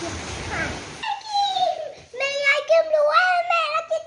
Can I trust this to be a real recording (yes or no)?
yes